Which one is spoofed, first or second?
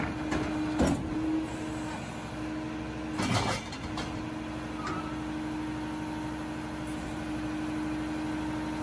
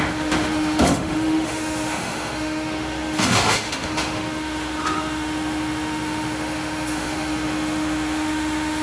second